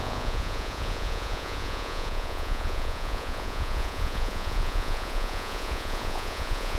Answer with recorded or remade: remade